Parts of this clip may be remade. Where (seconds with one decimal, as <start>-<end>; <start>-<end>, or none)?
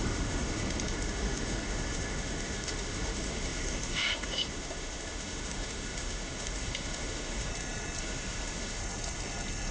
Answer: 0.0-7.5; 8.0-8.8